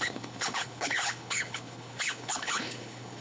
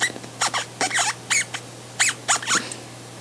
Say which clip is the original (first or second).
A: second